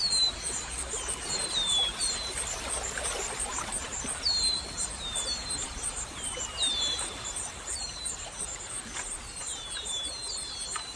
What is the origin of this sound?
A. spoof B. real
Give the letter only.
A